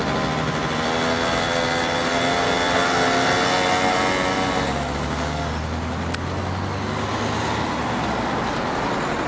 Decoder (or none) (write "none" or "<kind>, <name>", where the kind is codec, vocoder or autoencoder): none